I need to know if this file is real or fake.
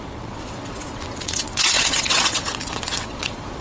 fake